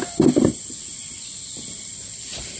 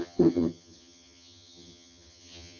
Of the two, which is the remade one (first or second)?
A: second